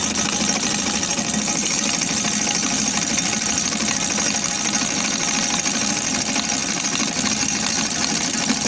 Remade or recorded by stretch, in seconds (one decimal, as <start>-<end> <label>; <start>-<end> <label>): 0.0-8.7 recorded